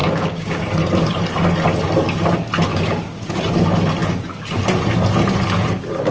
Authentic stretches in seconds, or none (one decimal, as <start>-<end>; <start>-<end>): 0.6-2.7; 3.3-6.1